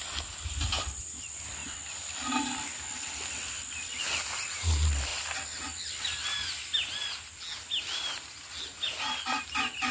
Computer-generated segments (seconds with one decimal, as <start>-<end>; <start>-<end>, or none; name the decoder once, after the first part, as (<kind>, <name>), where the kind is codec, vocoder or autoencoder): none